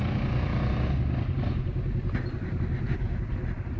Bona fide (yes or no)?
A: yes